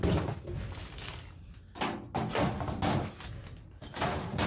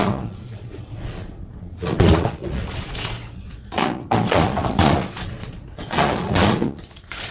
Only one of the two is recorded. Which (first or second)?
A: first